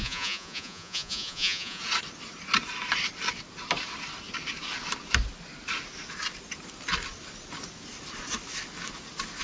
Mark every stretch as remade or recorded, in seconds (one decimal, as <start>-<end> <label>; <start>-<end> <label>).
0.0-1.8 remade; 1.8-9.4 recorded